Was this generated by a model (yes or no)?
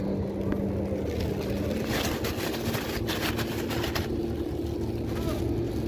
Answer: no